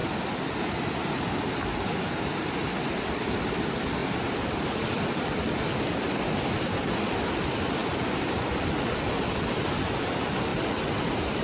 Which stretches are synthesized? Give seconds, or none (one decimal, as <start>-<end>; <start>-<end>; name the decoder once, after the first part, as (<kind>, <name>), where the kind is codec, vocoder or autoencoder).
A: 4.0-6.8 (vocoder, BigVGAN v2)